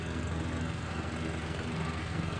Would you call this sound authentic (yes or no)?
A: no